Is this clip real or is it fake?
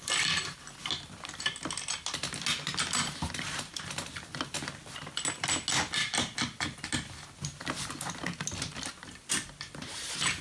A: real